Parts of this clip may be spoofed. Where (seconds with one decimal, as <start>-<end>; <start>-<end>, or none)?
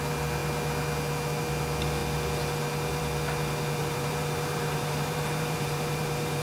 3.8-6.4